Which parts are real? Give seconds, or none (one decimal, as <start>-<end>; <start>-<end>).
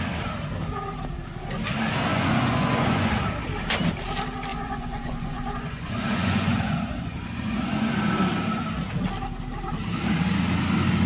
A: 0.0-2.1; 3.1-4.5; 8.1-11.1